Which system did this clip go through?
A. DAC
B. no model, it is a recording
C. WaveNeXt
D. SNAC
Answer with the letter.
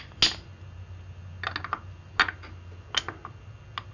B